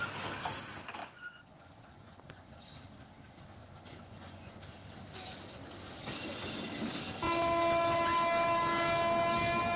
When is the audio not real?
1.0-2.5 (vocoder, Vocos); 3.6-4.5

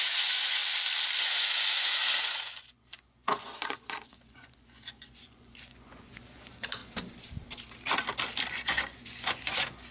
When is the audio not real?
0.0-0.6 (vocoder, Vocos); 1.2-6.8; 8.5-9.9

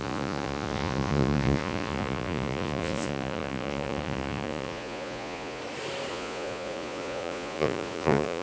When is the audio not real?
0.0-5.6 (vocoder, Vocos); 6.1-8.4

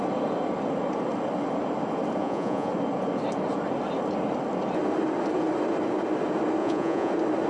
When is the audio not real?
2.2-2.7 (vocoder, Vocos); 6.6-7.1

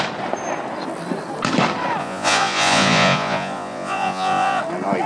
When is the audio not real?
2.0-4.6 (vocoder, Vocos)